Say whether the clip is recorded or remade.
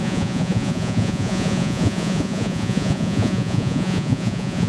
remade